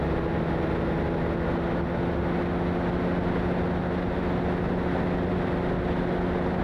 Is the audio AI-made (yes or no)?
no